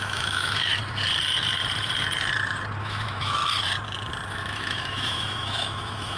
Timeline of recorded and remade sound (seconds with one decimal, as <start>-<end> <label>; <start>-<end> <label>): 0.0-0.7 remade; 0.7-2.8 recorded; 2.8-3.4 remade; 3.4-4.3 recorded; 4.3-6.2 remade